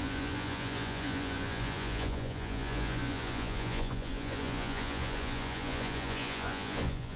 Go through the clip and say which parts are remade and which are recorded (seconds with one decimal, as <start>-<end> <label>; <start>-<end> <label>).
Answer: 0.0-7.2 remade